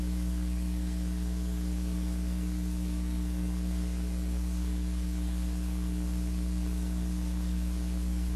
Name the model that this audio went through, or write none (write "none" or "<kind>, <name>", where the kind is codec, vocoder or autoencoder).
codec, SNAC